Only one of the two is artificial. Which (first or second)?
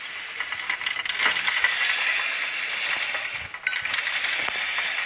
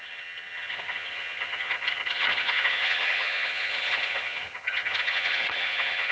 second